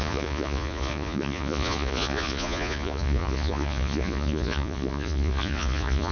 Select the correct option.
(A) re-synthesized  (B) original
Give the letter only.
A